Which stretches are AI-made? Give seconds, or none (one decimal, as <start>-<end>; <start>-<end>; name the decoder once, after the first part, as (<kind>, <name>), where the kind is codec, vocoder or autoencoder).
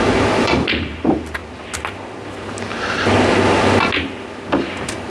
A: 0.0-1.4 (vocoder, BigVGAN v2); 4.5-5.1